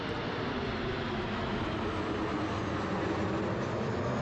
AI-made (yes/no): no